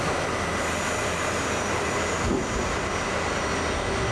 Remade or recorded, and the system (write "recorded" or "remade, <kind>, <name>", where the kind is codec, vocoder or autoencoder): recorded